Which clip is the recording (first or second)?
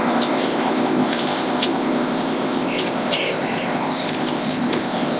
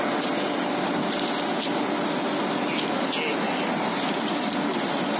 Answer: second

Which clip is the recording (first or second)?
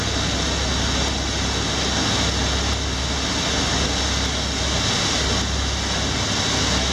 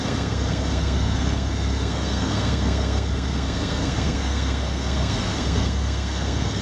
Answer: first